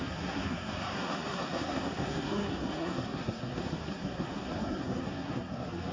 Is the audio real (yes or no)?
no